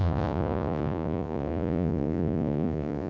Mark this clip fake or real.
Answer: fake